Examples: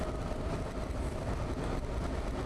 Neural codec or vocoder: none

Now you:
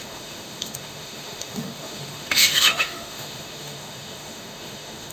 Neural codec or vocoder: autoencoder, DAC-VAE